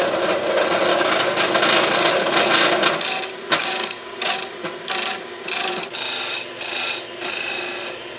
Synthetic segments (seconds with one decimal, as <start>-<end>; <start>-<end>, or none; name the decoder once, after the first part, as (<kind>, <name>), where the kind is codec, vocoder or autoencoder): 0.9-1.5 (codec, DAC); 3.6-4.3